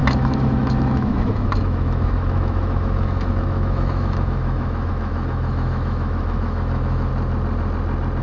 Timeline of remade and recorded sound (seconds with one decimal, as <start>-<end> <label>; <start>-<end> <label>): 0.0-7.1 remade; 7.1-8.2 recorded